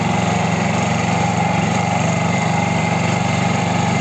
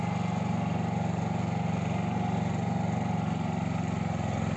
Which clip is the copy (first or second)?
first